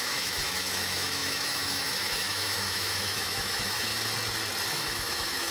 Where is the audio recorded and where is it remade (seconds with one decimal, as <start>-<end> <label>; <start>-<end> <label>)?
0.0-3.9 remade; 3.9-4.7 recorded; 4.7-5.5 remade